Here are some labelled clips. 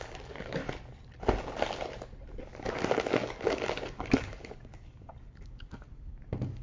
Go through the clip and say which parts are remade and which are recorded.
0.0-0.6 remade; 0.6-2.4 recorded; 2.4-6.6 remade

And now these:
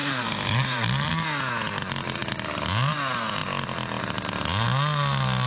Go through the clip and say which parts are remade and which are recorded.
0.0-1.1 remade; 1.1-5.5 recorded